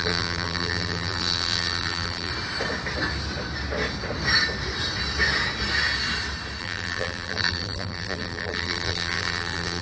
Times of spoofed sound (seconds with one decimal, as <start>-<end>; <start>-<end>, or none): 0.0-2.3; 6.6-9.8